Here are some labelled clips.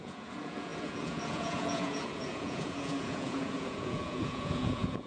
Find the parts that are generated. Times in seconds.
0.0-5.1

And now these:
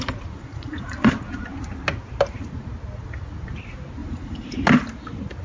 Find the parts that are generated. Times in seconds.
0.4-1.1; 4.0-4.6

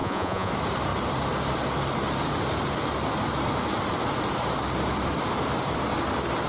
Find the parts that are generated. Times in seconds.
0.0-0.5

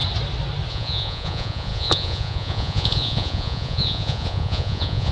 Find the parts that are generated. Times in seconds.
0.7-5.1

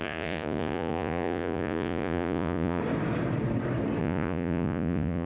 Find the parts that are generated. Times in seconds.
0.0-2.8; 4.0-5.3